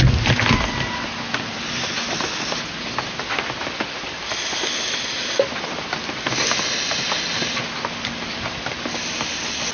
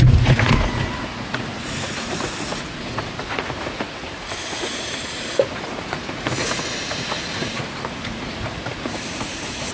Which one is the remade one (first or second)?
second